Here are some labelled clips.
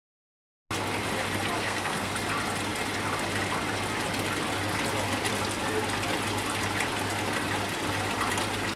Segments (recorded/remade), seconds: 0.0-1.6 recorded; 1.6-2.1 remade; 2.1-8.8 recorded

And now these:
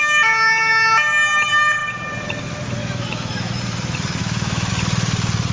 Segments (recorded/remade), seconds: 0.0-2.8 recorded; 2.8-3.6 remade; 3.6-4.2 recorded; 4.2-4.7 remade; 4.7-5.5 recorded

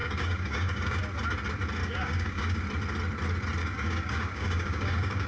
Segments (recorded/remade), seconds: 0.0-1.0 remade; 1.0-1.8 recorded; 1.8-2.6 remade; 2.6-3.6 recorded; 3.6-5.3 remade

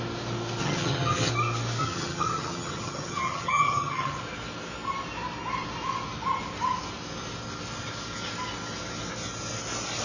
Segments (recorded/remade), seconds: 0.0-0.6 recorded; 0.6-1.3 remade; 1.3-1.8 recorded; 1.8-4.2 remade; 4.2-10.0 recorded

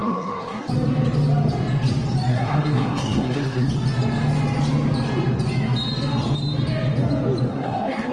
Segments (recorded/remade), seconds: 0.0-0.7 remade; 0.7-2.3 recorded; 2.3-3.7 remade; 3.7-7.5 recorded; 7.5-8.1 remade

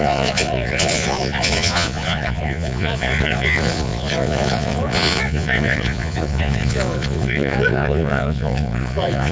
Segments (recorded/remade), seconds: 0.0-9.3 remade

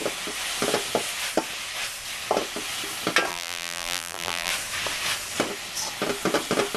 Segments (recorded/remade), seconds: 0.0-3.3 recorded; 3.3-4.5 remade; 4.5-6.8 recorded